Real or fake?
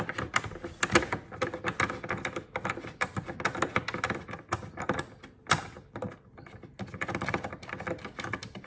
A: real